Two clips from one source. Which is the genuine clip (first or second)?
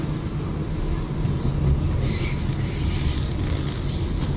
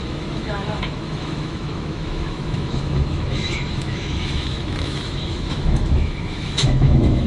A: first